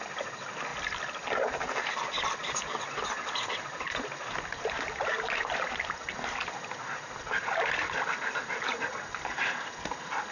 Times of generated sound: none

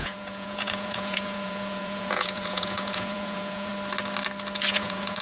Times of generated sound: 0.0-3.7 (vocoder, Vocos); 4.7-5.2

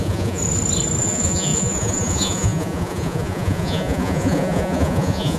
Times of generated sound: 0.0-0.4 (vocoder, Vocos); 1.0-5.4

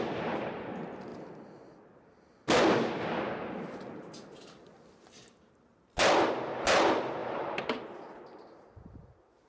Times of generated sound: none

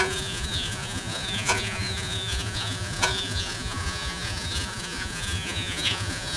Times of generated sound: 0.0-6.4 (vocoder, Vocos)

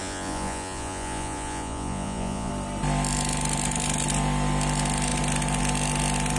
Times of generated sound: 0.0-2.5 (vocoder, Vocos)

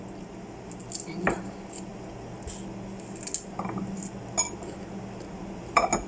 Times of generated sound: none